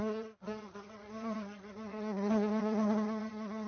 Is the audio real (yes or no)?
no